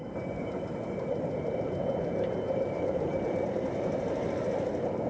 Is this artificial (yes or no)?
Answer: yes